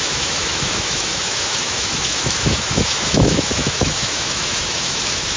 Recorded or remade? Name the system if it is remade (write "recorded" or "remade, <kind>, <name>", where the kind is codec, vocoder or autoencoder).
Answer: remade, autoencoder, DAC-VAE